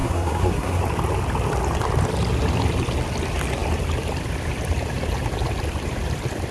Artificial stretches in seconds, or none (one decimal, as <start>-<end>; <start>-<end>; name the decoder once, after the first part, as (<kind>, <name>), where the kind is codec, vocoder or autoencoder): 0.0-0.8 (codec, SNAC)